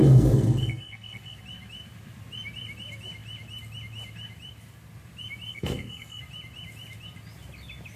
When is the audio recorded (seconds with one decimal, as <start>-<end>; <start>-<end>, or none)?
1.4-5.5; 6.2-8.0